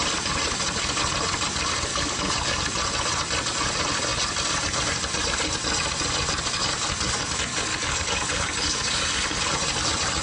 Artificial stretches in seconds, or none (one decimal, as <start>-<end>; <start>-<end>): 1.9-2.6; 7.5-9.4